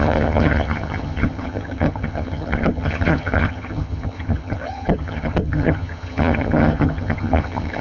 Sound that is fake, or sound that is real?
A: fake